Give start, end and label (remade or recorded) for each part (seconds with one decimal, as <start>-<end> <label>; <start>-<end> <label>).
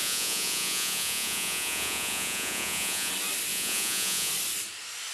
0.0-3.1 remade; 3.1-3.5 recorded; 3.5-4.3 remade; 4.3-5.1 recorded